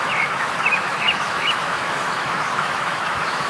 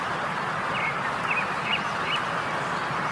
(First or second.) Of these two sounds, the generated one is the first